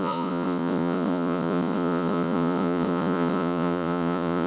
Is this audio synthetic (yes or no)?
yes